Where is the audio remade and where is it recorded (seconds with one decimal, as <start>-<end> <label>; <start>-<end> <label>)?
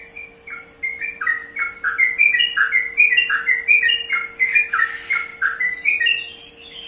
0.0-6.9 recorded